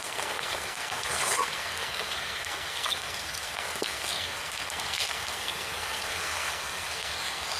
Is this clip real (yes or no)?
no